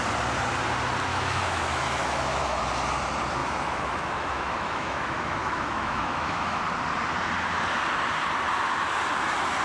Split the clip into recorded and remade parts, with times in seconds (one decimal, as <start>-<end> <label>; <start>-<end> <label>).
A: 0.0-1.1 recorded; 1.1-2.6 remade; 2.6-3.4 recorded; 3.4-6.6 remade; 6.6-9.6 recorded